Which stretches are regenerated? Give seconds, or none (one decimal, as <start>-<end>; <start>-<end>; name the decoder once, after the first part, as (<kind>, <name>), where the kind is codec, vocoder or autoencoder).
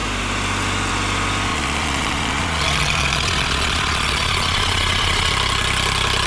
1.5-5.3 (vocoder, Vocos)